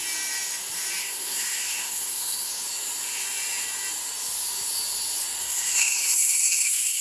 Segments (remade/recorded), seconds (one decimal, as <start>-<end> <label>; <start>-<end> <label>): 0.0-1.0 recorded; 1.0-2.5 remade; 2.5-5.4 recorded; 5.4-7.0 remade